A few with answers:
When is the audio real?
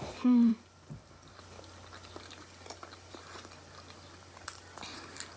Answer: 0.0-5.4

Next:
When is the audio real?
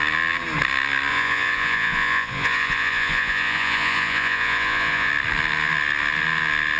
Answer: 0.0-1.1; 5.1-6.8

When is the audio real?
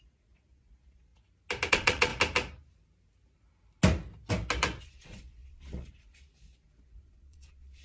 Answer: 1.1-1.7; 2.1-4.8